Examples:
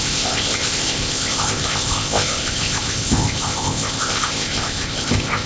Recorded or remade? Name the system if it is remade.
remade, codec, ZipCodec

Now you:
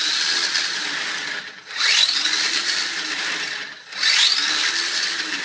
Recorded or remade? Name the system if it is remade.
recorded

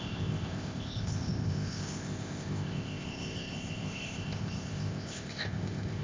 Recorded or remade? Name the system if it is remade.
remade, codec, ZipCodec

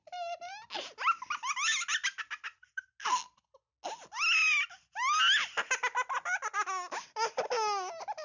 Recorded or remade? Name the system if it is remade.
recorded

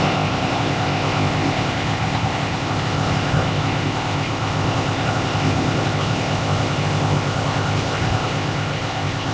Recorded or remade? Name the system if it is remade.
remade, codec, ZipCodec